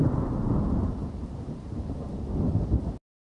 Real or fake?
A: real